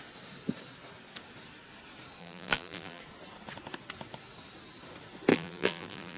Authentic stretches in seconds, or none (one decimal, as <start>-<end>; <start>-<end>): 0.0-2.2; 3.0-5.3